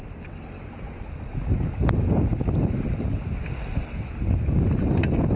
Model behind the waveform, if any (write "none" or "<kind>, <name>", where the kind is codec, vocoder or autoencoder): none